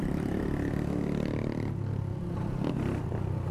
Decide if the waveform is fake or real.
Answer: real